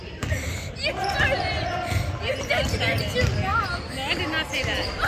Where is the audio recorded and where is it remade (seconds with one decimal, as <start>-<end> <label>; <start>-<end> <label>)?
0.0-5.1 recorded